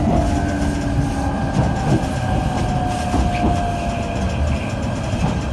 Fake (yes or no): no